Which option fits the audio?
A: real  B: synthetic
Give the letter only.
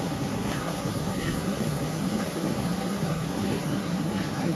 B